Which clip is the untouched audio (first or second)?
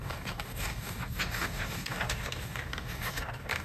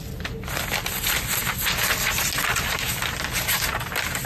second